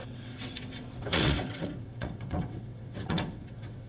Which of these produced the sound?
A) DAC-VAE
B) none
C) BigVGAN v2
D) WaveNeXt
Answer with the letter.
D